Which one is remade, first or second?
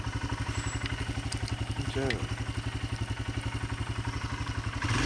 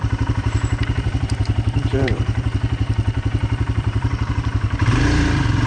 second